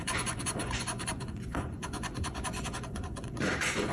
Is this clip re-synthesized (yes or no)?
yes